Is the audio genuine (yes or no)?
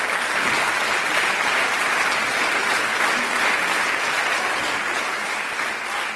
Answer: yes